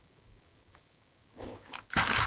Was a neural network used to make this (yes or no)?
yes